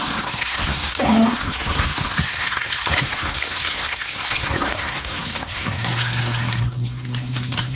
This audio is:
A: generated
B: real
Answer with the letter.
A